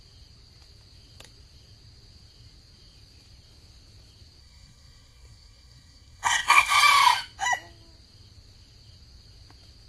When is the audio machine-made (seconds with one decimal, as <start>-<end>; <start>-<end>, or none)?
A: 4.4-6.8